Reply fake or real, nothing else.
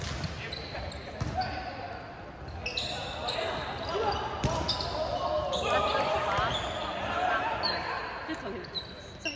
real